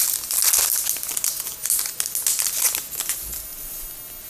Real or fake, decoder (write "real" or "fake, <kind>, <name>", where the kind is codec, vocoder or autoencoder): real